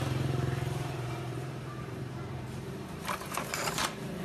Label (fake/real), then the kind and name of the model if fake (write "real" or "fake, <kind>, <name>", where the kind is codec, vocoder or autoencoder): fake, vocoder, BigVGAN v2